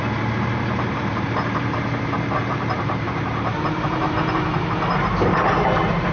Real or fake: fake